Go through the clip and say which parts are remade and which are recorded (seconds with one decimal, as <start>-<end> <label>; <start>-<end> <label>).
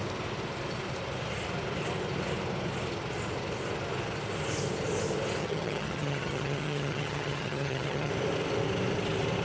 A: 0.0-5.4 recorded; 5.4-8.1 remade; 8.1-9.4 recorded